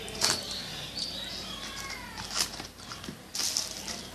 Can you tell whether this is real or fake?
real